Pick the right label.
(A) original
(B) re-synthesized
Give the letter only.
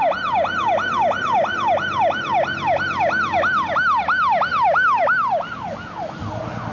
A